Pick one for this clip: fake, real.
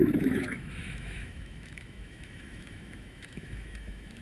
fake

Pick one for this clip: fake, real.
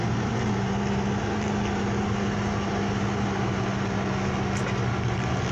real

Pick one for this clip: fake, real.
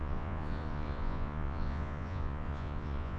fake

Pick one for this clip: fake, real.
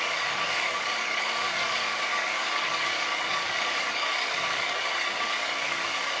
fake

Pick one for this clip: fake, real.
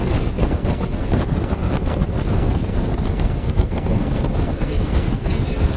fake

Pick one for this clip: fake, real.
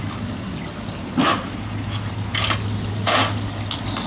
real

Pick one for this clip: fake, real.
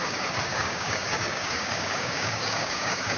fake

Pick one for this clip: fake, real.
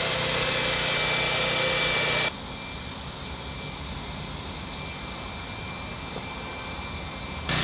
real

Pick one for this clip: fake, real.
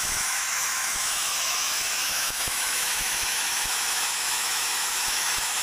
fake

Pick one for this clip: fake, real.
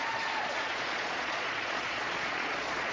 fake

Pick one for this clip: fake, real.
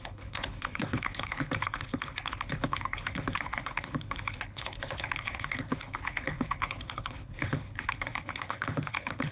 fake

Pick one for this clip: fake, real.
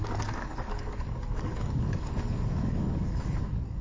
fake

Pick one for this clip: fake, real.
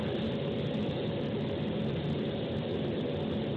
real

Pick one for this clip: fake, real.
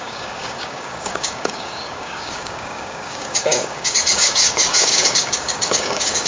fake